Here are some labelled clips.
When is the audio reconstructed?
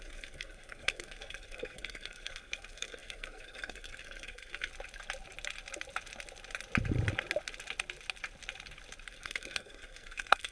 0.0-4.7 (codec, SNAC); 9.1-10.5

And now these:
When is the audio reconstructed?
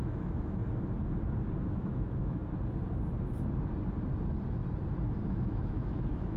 0.0-0.6 (autoencoder, DAC-VAE); 1.7-2.4; 5.3-6.4